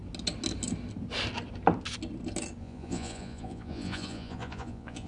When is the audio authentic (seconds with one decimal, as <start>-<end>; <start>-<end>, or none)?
0.0-2.6